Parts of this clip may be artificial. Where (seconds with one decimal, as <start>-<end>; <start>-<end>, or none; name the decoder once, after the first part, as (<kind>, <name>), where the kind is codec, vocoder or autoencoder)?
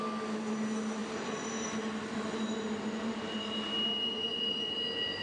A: none